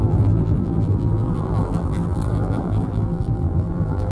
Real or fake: fake